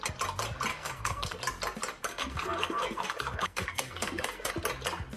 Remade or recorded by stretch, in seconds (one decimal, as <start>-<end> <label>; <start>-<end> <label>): 0.0-0.7 recorded; 0.7-1.4 remade; 1.4-2.1 recorded; 2.1-4.5 remade; 4.5-5.2 recorded